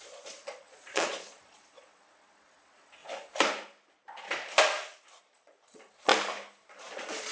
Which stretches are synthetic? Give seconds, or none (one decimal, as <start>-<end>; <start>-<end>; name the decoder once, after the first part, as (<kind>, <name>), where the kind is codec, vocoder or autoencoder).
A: 0.0-3.0 (vocoder, Vocos); 5.2-6.1; 6.7-7.3

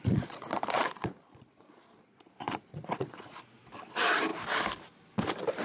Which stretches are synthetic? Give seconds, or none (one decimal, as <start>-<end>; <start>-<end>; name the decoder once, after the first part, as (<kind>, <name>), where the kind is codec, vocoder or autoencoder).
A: 0.0-3.4 (vocoder, Vocos)

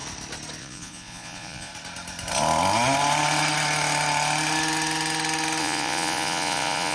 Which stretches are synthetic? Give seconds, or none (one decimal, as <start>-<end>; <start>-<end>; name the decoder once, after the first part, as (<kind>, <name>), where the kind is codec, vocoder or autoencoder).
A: 0.6-1.7 (vocoder, Vocos); 5.6-6.9

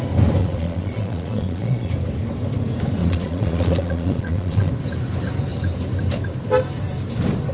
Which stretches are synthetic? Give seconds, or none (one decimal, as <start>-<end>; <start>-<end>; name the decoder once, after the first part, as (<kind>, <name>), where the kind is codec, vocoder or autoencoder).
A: 0.4-1.9 (vocoder, Vocos); 3.0-4.7